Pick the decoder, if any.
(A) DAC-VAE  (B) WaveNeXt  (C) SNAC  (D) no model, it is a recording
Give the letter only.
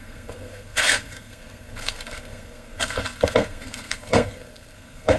C